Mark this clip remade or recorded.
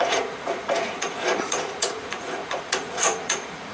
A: remade